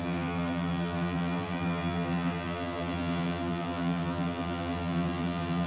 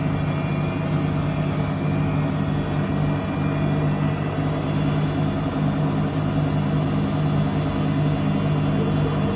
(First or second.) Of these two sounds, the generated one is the first